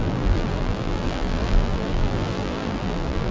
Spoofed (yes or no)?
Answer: yes